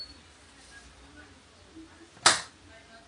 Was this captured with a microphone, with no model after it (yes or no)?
yes